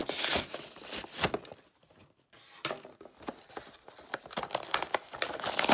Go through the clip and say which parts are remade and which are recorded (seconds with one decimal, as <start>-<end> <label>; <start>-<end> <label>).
0.0-5.7 recorded